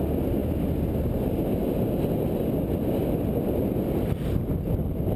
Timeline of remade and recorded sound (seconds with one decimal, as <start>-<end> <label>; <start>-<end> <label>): 0.0-5.2 recorded